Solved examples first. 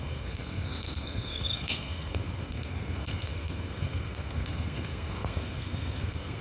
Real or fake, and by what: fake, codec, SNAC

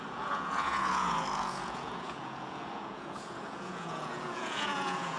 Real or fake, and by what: fake, vocoder, Vocos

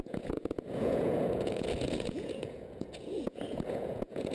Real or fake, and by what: fake, vocoder, Vocos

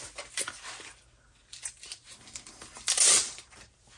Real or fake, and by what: real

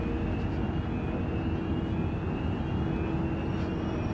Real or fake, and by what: real